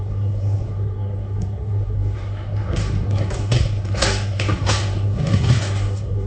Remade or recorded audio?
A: remade